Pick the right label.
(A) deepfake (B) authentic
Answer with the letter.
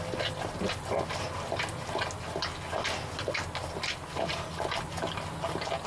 B